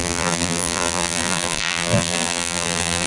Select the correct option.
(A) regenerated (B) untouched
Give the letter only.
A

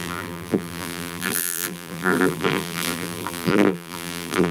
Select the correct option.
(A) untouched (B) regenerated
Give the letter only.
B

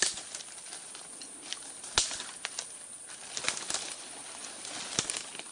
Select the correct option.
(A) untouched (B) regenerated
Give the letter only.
A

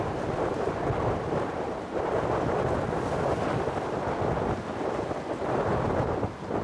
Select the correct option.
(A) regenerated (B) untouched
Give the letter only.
B